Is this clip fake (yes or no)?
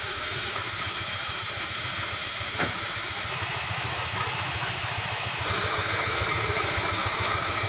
yes